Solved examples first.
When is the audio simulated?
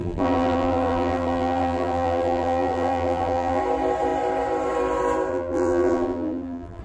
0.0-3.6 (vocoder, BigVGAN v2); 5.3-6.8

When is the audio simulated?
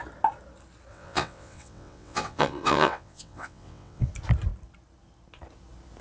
0.9-4.1 (vocoder, WaveNeXt)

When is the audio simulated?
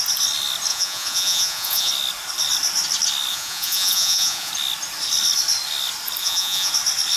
0.7-1.9 (vocoder, Vocos); 3.3-4.5; 6.2-6.7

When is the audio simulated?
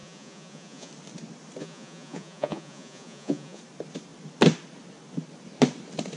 0.0-0.9 (vocoder, Vocos); 1.6-3.6